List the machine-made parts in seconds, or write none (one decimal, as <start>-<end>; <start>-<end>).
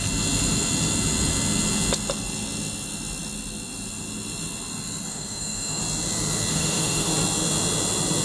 5.1-5.8; 6.5-7.1